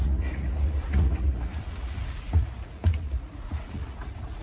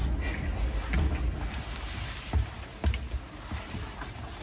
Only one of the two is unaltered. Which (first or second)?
second